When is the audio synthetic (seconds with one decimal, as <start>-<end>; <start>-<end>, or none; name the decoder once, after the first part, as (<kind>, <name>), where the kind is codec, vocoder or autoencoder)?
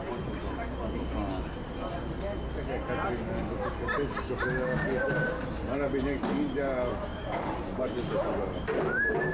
7.1-9.3 (vocoder, BigVGAN v2)